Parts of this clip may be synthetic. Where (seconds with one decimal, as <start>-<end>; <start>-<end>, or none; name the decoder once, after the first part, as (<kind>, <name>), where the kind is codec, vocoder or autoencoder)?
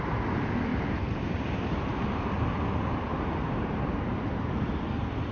0.7-1.6 (vocoder, BigVGAN v2); 3.1-4.8